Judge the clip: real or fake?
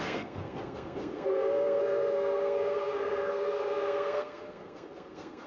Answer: fake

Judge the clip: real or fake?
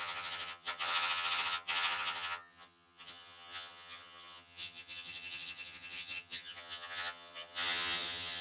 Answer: fake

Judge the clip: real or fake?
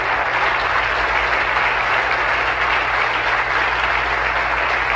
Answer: real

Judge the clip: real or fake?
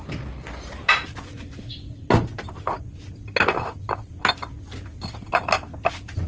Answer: real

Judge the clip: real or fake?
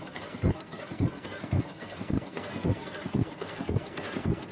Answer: fake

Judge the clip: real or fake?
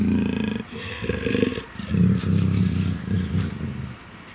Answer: real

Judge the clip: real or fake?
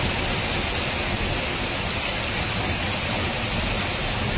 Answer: real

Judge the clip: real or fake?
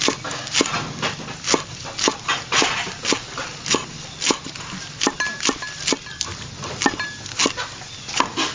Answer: real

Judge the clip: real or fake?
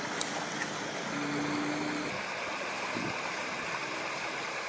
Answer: real